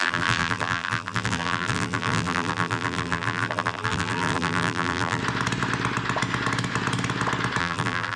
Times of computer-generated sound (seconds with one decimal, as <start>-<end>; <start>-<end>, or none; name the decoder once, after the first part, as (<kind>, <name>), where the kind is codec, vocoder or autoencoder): 0.0-5.2 (vocoder, BigVGAN v2); 7.6-8.2